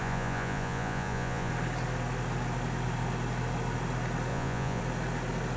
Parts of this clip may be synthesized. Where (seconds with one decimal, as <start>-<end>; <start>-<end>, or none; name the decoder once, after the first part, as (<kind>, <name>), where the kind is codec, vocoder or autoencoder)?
0.0-1.5 (vocoder, Vocos); 4.3-4.8